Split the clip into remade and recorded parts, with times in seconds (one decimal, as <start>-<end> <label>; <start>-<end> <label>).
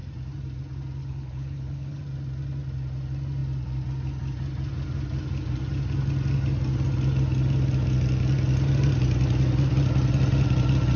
0.0-1.0 recorded; 1.0-2.0 remade; 2.0-11.0 recorded